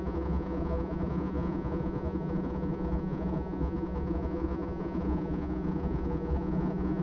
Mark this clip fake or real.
fake